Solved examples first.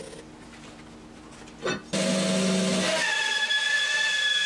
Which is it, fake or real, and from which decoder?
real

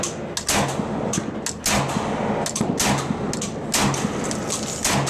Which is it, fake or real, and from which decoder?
real